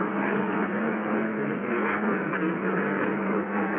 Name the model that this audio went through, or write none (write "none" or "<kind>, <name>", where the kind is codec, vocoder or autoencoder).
codec, SNAC